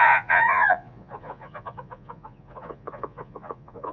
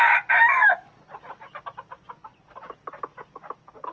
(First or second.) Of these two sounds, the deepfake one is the first